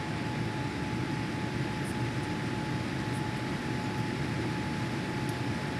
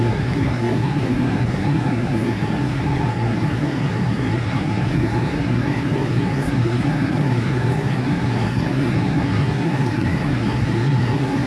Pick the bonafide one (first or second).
first